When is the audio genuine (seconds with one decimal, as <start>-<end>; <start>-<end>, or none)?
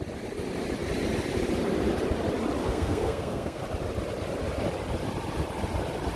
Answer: 0.0-2.6; 3.6-6.2